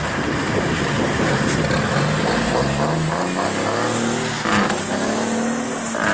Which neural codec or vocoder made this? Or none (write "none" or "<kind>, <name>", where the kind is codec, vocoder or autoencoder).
none